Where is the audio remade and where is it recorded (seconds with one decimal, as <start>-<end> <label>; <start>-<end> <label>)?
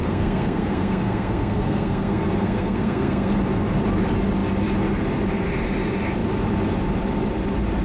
0.0-3.3 remade; 3.3-7.8 recorded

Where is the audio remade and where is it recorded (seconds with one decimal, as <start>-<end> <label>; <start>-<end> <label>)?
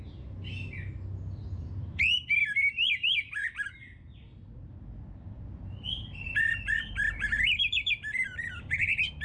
0.0-9.2 recorded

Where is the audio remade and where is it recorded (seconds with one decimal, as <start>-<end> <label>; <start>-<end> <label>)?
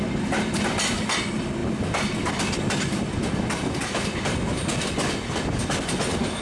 0.0-6.4 recorded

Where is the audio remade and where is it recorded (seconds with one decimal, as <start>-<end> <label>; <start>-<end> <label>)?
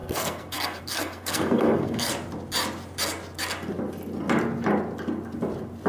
0.0-2.1 remade; 2.1-5.9 recorded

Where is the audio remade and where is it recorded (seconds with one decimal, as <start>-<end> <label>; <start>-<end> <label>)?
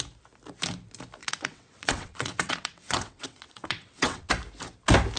0.0-1.2 recorded; 1.2-4.3 remade; 4.3-5.2 recorded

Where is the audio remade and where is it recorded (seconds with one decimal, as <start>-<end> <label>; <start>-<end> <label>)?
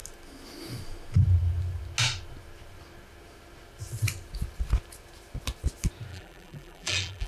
0.0-6.1 recorded; 6.1-7.3 remade